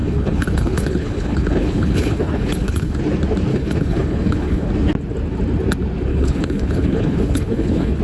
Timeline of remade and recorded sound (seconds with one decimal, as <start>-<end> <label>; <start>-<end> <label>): 0.0-3.0 remade; 3.0-3.5 recorded; 3.5-4.7 remade; 4.7-6.1 recorded; 6.1-8.0 remade